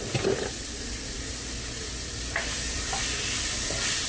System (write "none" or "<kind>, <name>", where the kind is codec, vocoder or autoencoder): none